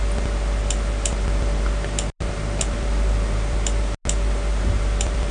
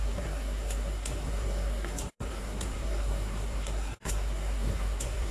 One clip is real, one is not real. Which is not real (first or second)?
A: second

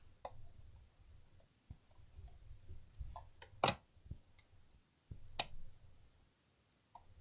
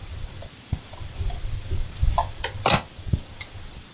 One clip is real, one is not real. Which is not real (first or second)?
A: second